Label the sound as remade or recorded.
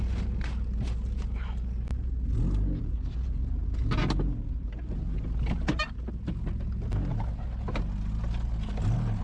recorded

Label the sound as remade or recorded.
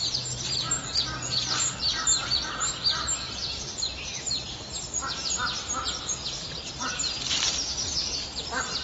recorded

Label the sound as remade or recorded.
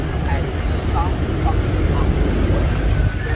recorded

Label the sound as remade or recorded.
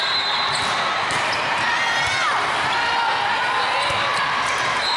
recorded